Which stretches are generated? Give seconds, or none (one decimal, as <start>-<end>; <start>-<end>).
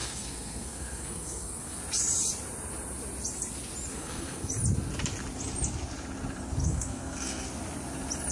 0.0-1.8; 3.9-4.5; 6.6-7.5